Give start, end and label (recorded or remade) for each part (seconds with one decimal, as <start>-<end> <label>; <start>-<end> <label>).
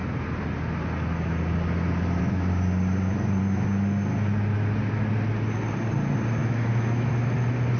0.0-6.4 recorded; 6.4-7.1 remade; 7.1-7.8 recorded